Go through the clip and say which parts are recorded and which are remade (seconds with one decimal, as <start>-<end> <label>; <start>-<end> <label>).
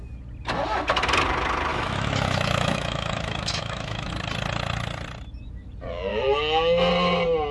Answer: 0.0-1.7 recorded; 1.7-4.1 remade; 4.1-6.1 recorded; 6.1-6.9 remade; 6.9-7.5 recorded